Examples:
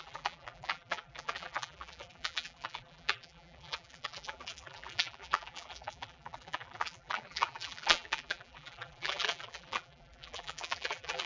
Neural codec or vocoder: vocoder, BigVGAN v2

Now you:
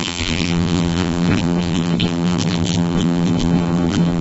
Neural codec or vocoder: vocoder, BigVGAN v2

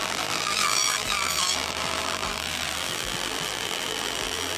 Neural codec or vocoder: vocoder, BigVGAN v2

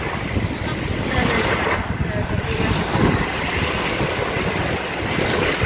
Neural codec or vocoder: none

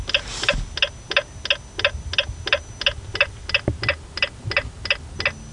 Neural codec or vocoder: none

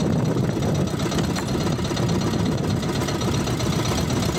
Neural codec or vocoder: none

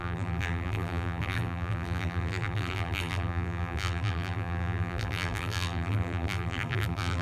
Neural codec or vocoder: vocoder, BigVGAN v2